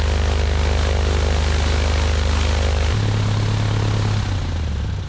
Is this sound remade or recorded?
recorded